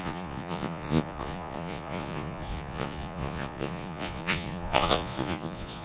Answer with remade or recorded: remade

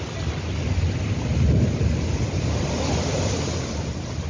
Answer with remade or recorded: recorded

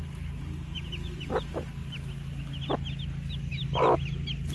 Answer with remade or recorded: recorded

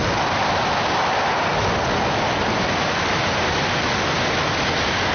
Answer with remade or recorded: recorded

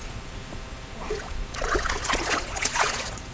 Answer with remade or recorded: remade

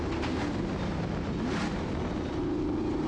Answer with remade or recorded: recorded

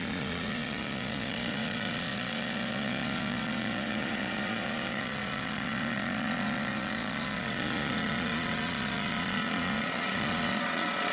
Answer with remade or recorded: remade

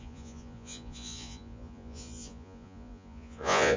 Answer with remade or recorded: remade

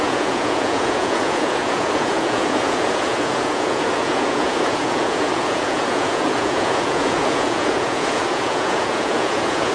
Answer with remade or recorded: remade